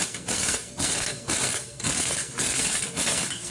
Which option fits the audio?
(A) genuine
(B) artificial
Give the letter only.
B